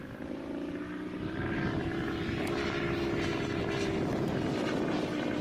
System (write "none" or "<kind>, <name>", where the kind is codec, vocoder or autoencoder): none